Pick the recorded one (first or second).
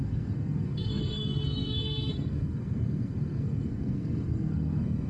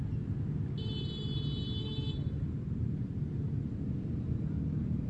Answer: second